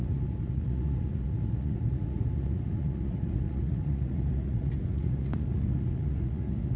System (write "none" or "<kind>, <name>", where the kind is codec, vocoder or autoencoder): vocoder, Vocos